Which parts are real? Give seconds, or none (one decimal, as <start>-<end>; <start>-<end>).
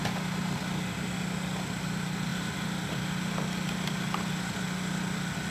0.0-5.5